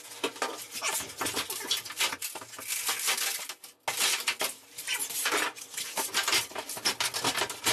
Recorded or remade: recorded